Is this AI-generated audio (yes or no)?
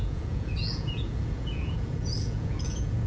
yes